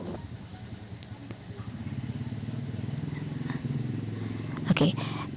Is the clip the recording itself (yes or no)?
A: yes